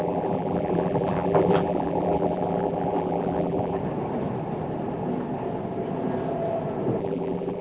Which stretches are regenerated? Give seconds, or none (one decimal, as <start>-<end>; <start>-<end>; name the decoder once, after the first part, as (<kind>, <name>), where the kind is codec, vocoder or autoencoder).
0.0-3.8 (vocoder, BigVGAN v2); 7.0-7.6